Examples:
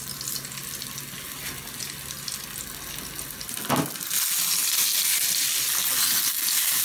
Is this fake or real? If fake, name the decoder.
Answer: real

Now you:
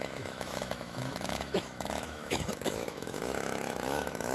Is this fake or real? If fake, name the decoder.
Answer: fake, autoencoder, DAC-VAE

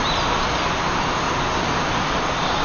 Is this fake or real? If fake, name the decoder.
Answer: real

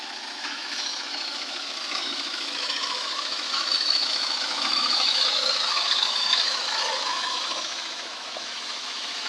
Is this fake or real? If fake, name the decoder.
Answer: fake, autoencoder, DAC-VAE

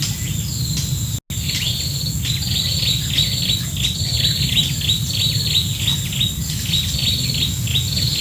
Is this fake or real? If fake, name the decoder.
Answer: real